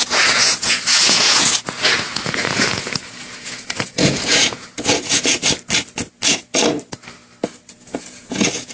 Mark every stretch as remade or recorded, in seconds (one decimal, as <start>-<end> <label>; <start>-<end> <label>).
0.0-5.4 remade; 5.4-7.7 recorded; 7.7-8.7 remade